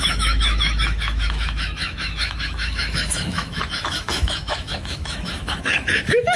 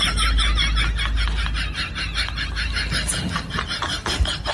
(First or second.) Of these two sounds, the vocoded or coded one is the first